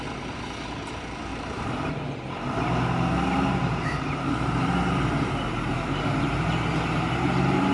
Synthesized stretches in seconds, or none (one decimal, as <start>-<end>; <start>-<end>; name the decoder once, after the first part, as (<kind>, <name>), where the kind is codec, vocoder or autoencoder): 1.3-1.9 (vocoder, BigVGAN v2); 3.7-6.7